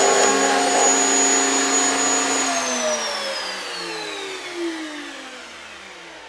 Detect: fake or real real